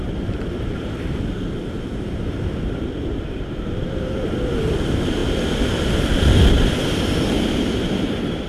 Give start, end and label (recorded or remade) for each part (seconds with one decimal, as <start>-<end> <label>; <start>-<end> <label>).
0.0-5.2 remade; 5.2-6.5 recorded; 6.5-8.5 remade